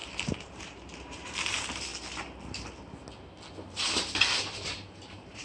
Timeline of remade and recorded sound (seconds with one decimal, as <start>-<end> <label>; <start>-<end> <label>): 0.0-1.9 remade; 1.9-4.5 recorded; 4.5-5.4 remade